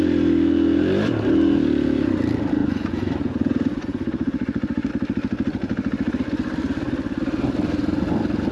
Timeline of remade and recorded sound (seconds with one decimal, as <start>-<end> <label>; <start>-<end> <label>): 0.0-2.6 recorded; 2.6-4.9 remade; 4.9-8.5 recorded